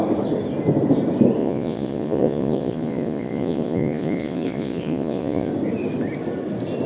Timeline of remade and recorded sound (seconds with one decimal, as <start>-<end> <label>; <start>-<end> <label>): 0.0-1.4 recorded; 1.4-5.5 remade; 5.5-6.9 recorded